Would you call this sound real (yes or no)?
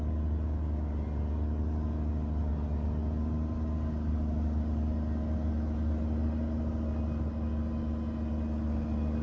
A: yes